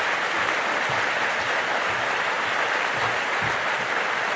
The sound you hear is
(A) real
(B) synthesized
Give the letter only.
A